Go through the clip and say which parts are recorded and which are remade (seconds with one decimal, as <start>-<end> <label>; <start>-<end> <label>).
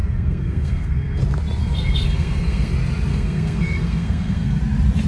0.0-1.2 remade; 1.2-1.6 recorded; 1.6-2.7 remade; 2.7-3.1 recorded; 3.1-4.6 remade; 4.6-5.1 recorded